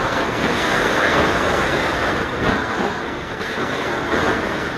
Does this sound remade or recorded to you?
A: remade